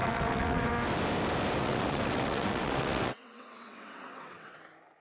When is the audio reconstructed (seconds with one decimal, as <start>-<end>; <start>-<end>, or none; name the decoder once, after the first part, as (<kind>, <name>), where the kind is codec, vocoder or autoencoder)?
0.0-0.7 (vocoder, WaveNeXt); 1.6-4.6